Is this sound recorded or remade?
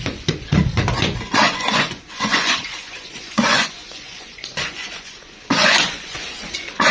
remade